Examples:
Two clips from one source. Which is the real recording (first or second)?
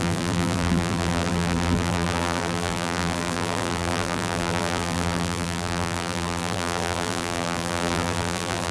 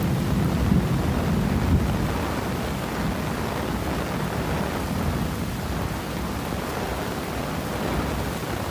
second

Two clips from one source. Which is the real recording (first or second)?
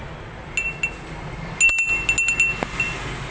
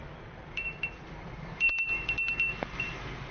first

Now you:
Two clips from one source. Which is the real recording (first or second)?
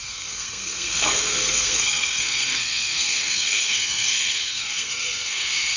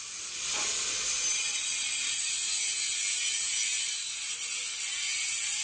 second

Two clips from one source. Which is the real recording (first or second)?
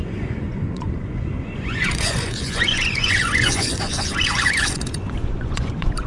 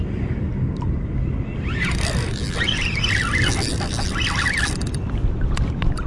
second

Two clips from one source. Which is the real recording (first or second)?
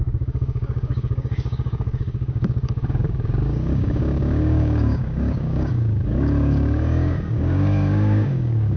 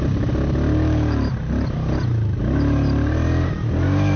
second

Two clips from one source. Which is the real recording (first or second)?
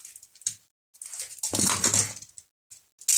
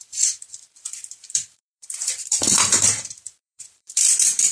first